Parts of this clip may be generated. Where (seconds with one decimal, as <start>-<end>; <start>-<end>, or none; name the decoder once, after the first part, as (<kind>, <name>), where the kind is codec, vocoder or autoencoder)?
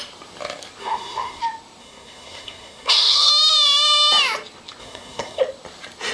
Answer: 0.8-1.4 (codec, SNAC); 1.8-3.3; 4.8-5.4